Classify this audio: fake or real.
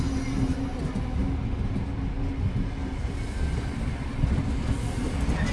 real